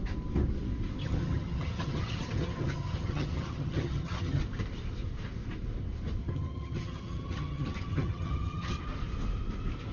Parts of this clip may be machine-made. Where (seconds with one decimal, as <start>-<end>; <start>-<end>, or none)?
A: 1.0-4.4; 6.2-8.8